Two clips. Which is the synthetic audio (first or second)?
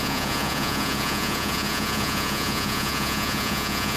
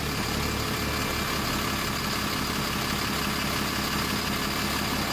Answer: first